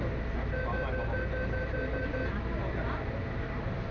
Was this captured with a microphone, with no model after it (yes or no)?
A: yes